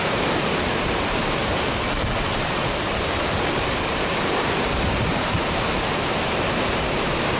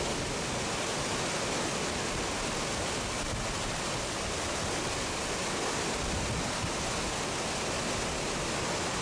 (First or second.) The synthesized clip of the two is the first